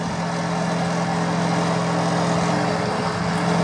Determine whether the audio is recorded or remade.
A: recorded